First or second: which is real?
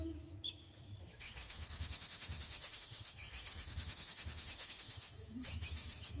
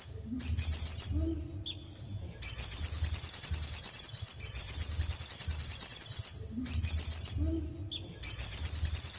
second